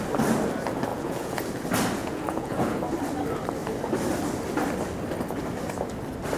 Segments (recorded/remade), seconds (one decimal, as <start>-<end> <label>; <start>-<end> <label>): 0.0-0.9 recorded; 0.9-1.4 remade; 1.4-2.0 recorded; 2.0-2.8 remade; 2.8-6.4 recorded